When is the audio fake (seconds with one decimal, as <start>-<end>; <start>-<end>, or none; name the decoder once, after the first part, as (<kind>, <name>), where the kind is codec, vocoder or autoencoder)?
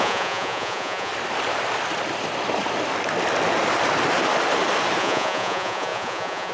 0.0-1.1 (vocoder, Vocos); 5.0-6.5